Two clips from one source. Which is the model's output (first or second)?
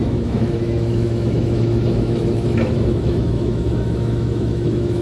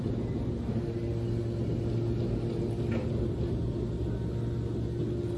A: first